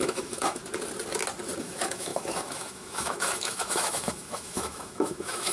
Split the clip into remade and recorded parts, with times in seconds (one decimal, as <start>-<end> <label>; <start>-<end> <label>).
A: 0.0-0.6 remade; 0.6-1.6 recorded; 1.6-5.5 remade